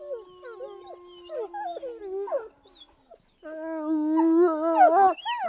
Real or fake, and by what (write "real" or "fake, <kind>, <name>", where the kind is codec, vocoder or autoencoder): real